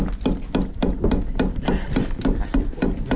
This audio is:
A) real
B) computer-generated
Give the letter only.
A